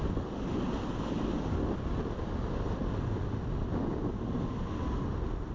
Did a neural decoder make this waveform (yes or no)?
no